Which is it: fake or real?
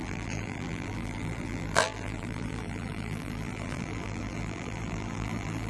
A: fake